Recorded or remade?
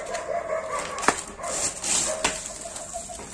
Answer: recorded